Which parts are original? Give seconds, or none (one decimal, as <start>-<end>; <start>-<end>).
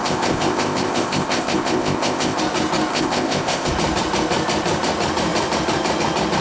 2.4-2.9; 3.7-6.4